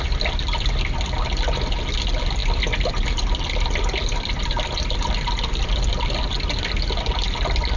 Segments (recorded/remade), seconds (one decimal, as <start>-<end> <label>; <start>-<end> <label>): 0.0-7.8 recorded